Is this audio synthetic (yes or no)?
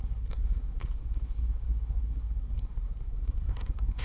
yes